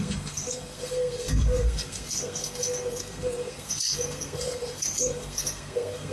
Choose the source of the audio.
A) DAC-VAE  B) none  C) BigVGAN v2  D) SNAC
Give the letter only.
D